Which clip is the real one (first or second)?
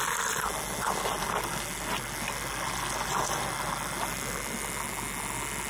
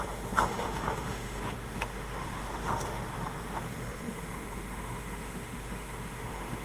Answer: first